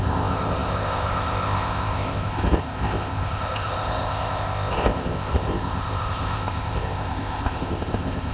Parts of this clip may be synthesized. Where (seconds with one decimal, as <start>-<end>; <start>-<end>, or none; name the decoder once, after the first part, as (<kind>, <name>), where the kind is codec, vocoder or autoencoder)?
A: 0.0-8.3 (codec, ZipCodec)